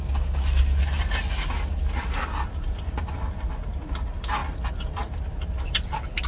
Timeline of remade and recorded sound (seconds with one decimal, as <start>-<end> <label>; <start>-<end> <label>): 0.0-6.3 recorded